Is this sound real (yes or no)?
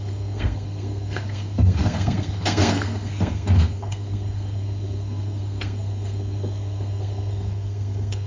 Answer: no